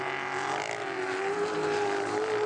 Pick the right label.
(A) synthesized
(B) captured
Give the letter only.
B